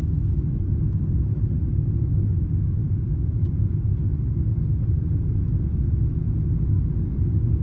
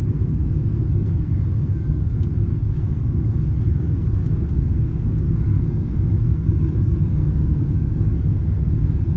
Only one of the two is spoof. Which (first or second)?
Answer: second